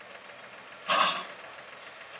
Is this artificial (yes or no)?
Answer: no